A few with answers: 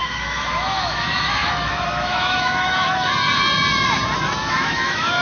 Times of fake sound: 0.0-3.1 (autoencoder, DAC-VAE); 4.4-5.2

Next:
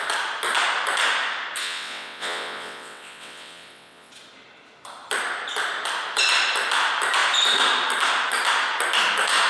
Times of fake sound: 1.6-4.1 (vocoder, WaveNeXt)

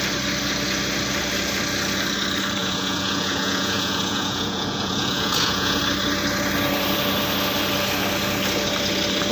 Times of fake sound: 2.6-5.8 (vocoder, Vocos)

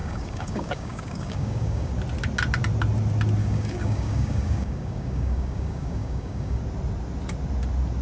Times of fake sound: 0.0-1.9 (codec, DAC); 3.4-6.6